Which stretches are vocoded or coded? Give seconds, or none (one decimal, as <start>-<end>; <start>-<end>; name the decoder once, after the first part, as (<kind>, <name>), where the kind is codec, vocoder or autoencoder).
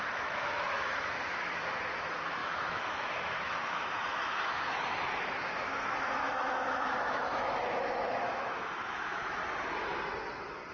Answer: 0.0-9.4 (autoencoder, DAC-VAE)